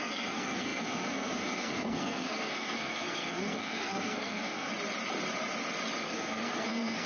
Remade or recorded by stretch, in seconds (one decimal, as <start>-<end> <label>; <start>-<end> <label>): 0.0-4.7 remade; 4.7-6.0 recorded; 6.0-7.1 remade